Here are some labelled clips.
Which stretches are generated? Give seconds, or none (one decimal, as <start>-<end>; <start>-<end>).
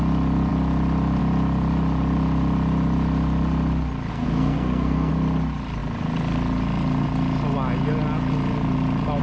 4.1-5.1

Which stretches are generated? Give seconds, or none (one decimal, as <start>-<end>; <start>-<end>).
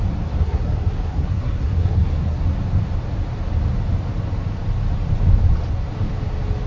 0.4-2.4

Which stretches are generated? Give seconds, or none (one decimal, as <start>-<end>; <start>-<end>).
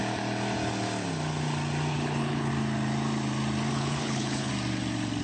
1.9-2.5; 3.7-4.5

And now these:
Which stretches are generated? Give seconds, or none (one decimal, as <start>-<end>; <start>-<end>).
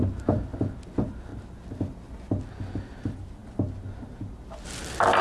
none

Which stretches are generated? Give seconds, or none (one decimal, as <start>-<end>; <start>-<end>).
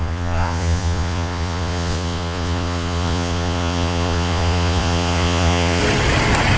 0.0-5.8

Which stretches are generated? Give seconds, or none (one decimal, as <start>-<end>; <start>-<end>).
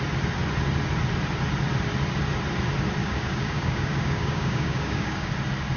3.0-5.3